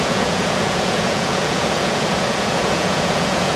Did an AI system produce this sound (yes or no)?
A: yes